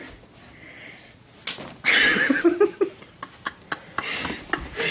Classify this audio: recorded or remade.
recorded